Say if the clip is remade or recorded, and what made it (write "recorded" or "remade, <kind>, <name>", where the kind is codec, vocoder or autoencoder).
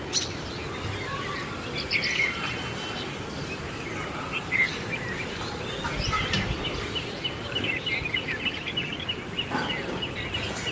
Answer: recorded